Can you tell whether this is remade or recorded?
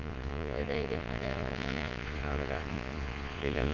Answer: remade